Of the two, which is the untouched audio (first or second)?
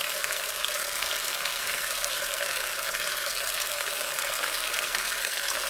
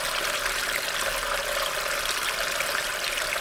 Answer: second